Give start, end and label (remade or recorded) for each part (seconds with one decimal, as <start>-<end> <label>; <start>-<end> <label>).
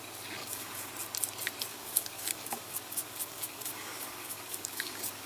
0.0-0.4 recorded; 0.4-0.9 remade; 0.9-1.7 recorded; 1.7-5.3 remade